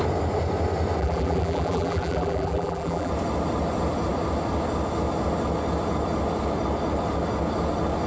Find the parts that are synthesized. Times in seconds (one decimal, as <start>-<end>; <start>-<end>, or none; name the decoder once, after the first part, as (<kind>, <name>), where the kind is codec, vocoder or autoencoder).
1.0-3.1 (vocoder, BigVGAN v2)